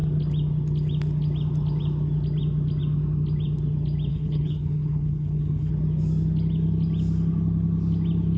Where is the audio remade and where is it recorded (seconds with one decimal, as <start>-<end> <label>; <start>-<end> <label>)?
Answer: 0.0-4.1 recorded; 4.1-5.7 remade; 5.7-8.4 recorded